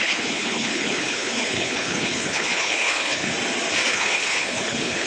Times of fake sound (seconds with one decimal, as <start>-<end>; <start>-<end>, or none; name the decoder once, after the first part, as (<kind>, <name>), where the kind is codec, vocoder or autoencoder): 0.0-3.3 (codec, HILCodec); 3.9-5.1